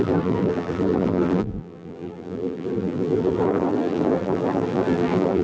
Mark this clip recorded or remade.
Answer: remade